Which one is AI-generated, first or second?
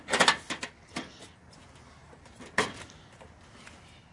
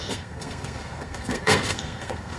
second